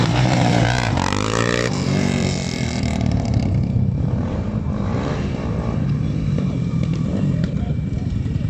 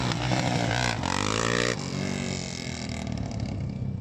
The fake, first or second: first